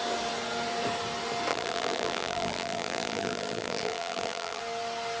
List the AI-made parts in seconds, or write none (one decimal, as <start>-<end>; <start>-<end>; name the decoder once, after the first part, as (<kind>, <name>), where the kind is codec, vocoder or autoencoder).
1.5-4.6 (vocoder, BigVGAN v2)